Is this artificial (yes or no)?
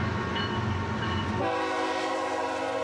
no